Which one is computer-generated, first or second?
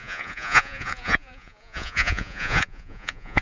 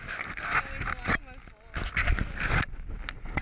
first